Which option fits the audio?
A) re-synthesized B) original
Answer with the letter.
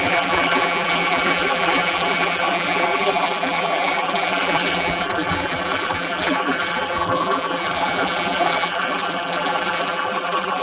A